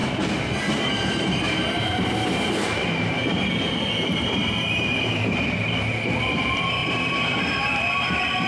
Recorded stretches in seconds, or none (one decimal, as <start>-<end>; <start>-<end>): none